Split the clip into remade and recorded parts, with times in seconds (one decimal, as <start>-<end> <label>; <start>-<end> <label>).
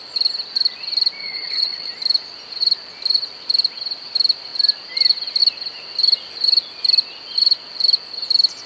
0.0-1.2 recorded; 1.2-1.9 remade; 1.9-8.7 recorded